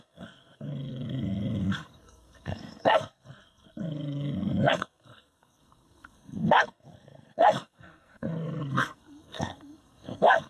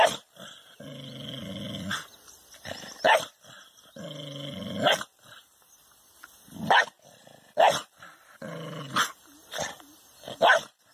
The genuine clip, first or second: second